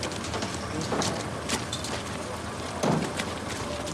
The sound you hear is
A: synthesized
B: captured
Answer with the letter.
B